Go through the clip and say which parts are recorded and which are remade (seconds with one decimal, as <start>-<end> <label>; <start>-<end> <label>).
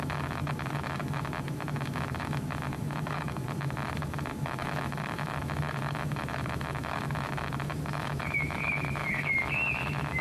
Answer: 0.0-10.2 remade